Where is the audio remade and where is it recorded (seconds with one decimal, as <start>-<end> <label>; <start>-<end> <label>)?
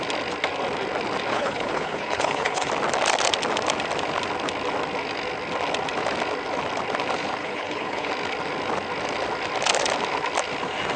0.0-1.3 recorded; 1.3-2.7 remade; 2.7-7.4 recorded; 7.4-8.1 remade; 8.1-11.0 recorded